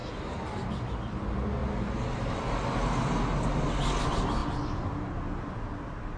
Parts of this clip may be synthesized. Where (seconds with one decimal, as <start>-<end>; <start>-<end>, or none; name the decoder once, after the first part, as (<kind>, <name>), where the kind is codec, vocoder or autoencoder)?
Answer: none